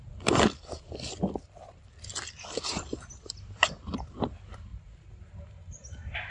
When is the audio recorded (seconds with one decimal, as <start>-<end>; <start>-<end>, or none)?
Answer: 4.7-6.3